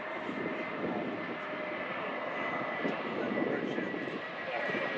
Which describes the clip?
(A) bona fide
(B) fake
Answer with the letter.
B